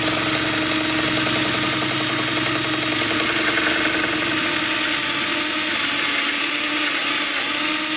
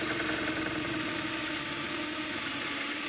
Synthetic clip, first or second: second